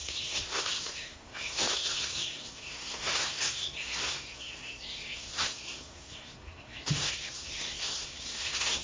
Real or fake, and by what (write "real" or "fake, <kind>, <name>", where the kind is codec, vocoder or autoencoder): fake, codec, SNAC